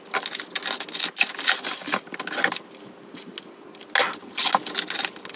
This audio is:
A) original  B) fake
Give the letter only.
A